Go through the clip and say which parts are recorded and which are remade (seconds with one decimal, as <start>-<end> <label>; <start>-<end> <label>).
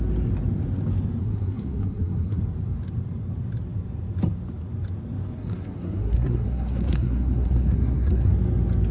0.0-1.2 recorded; 1.2-2.4 remade; 2.4-5.4 recorded; 5.4-8.3 remade; 8.3-8.9 recorded